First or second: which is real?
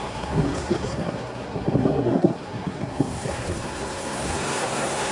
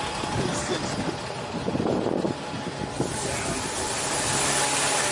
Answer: second